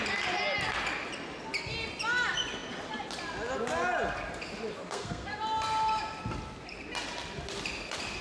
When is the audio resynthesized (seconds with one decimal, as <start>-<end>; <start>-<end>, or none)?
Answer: 4.8-5.4